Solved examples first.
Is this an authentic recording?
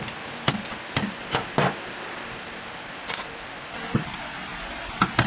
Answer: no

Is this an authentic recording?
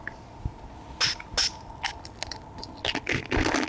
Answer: yes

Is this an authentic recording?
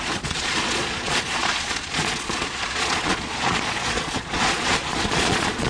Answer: no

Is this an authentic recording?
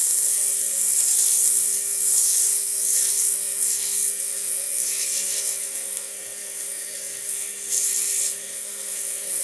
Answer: no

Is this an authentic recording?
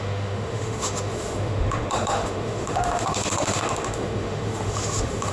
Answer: no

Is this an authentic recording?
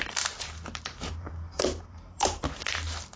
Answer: no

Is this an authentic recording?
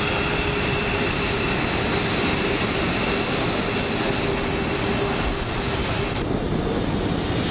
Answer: yes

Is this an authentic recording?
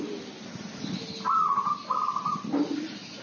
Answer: yes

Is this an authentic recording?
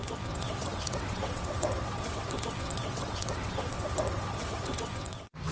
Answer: no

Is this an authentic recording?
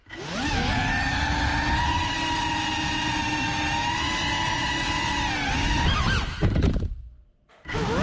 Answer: yes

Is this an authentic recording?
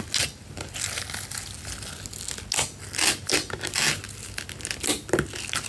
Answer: yes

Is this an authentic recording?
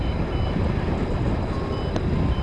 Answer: yes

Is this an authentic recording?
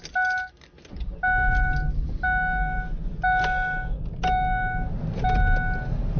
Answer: yes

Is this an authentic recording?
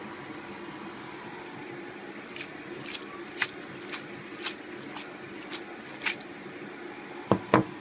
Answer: yes